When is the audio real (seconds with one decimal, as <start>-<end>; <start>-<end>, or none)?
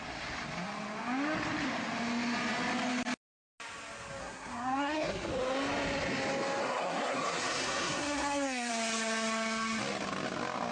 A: 0.0-4.2; 5.3-6.6; 8.7-10.7